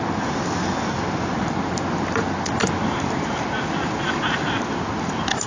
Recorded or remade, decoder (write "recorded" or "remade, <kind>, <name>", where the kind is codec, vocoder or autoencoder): recorded